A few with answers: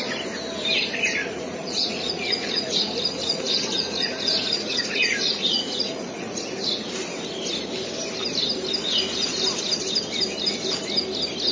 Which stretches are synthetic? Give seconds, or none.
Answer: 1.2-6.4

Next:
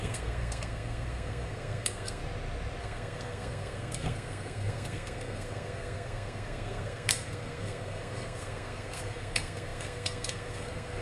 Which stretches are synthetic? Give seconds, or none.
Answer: 0.0-2.2; 2.8-11.0

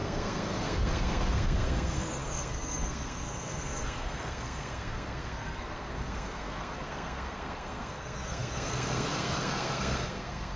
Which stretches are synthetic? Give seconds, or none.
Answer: 0.0-10.6

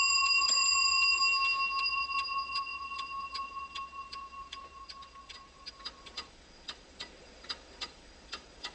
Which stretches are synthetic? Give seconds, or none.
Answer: 0.0-1.2; 1.8-8.7

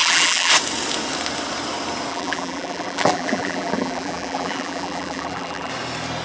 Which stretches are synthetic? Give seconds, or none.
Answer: 0.0-0.5; 2.1-5.7